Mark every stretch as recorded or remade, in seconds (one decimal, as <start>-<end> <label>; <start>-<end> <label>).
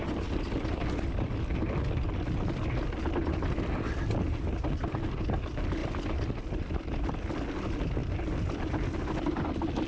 0.0-9.9 recorded